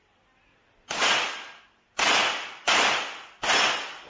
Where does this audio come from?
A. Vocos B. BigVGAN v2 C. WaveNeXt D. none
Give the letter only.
D